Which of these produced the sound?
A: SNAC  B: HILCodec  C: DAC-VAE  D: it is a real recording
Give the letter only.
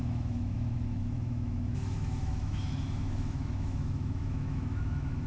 C